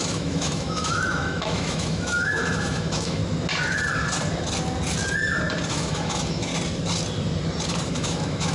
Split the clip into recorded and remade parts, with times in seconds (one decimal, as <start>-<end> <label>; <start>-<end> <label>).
0.0-3.2 remade; 3.2-5.7 recorded; 5.7-6.5 remade; 6.5-7.9 recorded; 7.9-8.5 remade